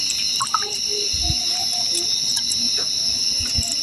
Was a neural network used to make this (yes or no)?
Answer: no